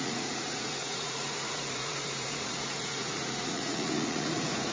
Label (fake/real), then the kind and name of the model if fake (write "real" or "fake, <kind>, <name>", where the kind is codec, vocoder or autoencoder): fake, vocoder, Vocos